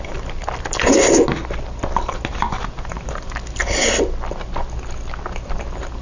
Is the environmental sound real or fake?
real